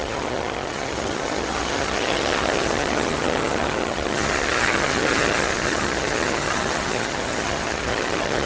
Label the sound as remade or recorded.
remade